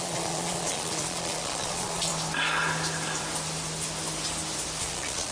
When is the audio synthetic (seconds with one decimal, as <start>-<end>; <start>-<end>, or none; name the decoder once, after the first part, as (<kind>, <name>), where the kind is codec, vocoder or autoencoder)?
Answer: 0.0-2.1 (vocoder, Vocos); 4.8-5.3